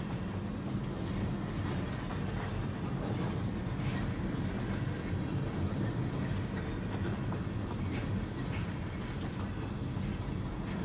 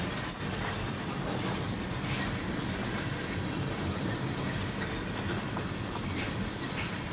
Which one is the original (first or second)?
first